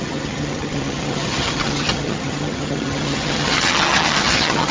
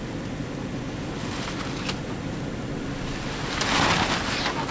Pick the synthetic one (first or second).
first